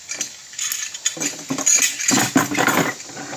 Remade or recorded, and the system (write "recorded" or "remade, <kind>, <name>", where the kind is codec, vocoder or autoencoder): recorded